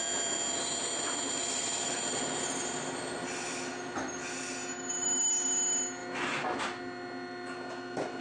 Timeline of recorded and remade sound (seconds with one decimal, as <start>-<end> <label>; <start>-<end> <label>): 0.0-8.2 recorded